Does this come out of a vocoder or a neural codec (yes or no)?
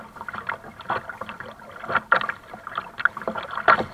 no